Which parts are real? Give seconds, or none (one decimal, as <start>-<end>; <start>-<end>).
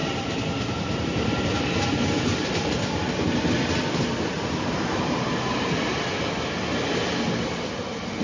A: 0.0-8.2